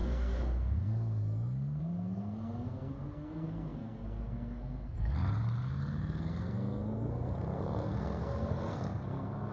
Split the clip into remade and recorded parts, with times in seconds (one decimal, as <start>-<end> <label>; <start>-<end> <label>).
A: 0.0-9.5 remade